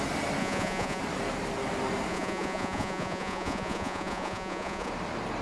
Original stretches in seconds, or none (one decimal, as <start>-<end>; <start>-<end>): 0.0-0.4; 1.0-2.1; 4.9-5.4